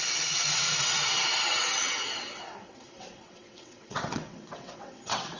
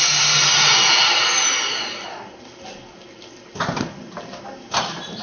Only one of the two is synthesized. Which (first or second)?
first